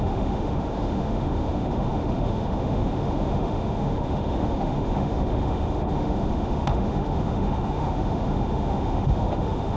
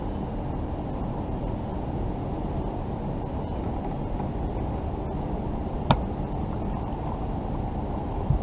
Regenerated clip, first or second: first